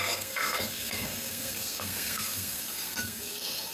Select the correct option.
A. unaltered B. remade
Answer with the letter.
B